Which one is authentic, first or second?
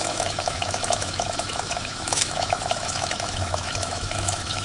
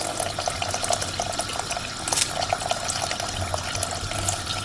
second